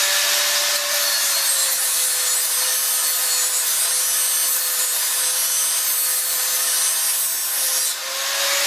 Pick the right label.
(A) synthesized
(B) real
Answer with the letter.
B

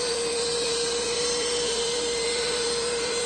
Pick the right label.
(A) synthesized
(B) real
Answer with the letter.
A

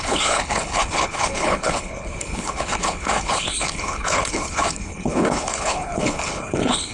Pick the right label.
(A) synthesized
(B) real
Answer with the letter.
A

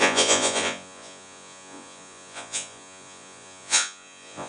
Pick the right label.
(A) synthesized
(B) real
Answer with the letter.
A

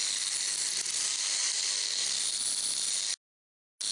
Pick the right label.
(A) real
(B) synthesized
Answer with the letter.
A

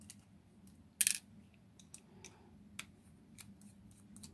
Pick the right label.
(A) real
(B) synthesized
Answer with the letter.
A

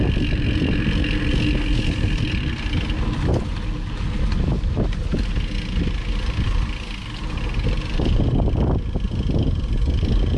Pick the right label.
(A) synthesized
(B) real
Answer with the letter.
B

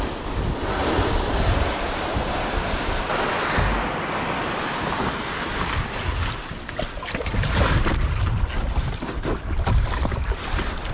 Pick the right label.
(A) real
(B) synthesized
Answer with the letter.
A